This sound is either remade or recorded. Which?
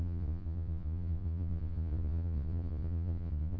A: remade